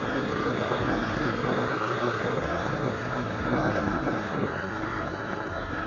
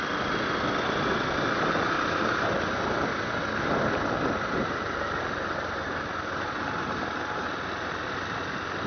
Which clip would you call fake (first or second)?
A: first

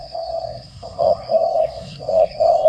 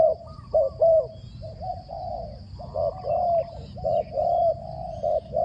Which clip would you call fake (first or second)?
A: first